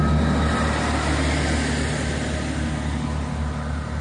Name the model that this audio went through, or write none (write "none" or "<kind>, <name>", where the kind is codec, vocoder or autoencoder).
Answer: none